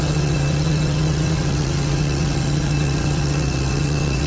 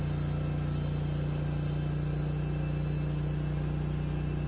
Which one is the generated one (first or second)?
first